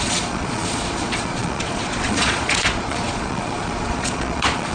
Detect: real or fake fake